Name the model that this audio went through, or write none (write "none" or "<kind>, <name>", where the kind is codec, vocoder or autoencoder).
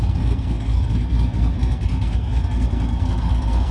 codec, SNAC